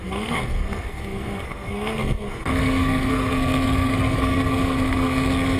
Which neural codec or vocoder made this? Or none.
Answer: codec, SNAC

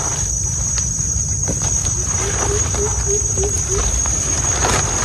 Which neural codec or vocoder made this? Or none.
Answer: none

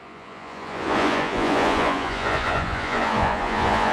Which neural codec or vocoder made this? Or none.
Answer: vocoder, Vocos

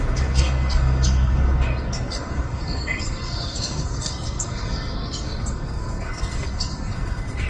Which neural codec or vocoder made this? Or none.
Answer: codec, SNAC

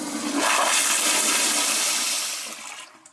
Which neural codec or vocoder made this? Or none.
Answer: none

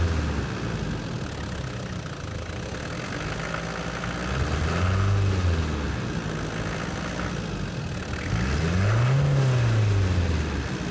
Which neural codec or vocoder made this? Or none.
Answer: none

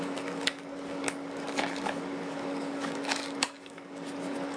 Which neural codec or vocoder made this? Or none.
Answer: codec, DAC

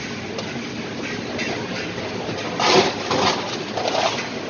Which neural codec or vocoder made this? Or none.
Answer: none